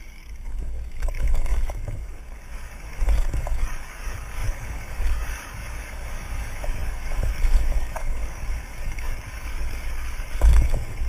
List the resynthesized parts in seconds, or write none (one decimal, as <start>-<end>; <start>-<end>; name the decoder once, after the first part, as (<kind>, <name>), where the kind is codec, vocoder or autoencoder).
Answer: 0.0-11.1 (codec, DAC)

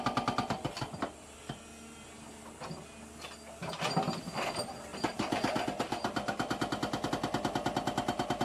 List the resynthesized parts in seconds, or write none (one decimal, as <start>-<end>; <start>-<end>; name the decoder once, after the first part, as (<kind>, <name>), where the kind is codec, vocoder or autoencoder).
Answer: none

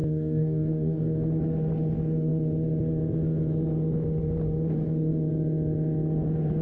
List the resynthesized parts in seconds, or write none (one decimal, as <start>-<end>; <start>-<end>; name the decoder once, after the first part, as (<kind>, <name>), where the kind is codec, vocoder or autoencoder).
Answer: 0.0-1.0 (codec, DAC)

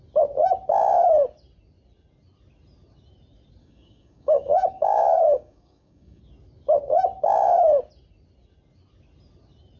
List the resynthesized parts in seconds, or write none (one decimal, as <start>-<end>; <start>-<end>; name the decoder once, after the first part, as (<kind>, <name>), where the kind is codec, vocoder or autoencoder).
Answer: 3.6-6.2 (codec, DAC)

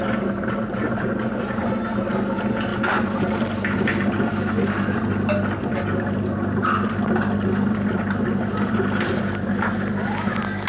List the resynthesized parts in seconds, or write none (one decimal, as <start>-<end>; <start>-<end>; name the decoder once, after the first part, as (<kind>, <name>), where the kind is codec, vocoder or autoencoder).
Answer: none

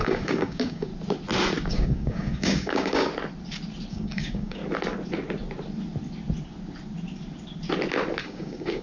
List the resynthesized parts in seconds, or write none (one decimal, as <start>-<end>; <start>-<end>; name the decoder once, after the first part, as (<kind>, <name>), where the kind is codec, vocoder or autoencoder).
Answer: 0.0-0.9 (codec, DAC); 1.7-3.1; 3.9-4.6; 8.2-8.8

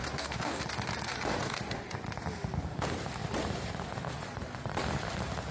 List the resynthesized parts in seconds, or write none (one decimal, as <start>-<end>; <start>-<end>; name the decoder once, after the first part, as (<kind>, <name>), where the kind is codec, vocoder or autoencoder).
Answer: 0.0-0.6 (codec, DAC); 1.3-1.8